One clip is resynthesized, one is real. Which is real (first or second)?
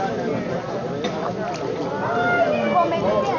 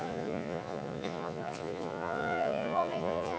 first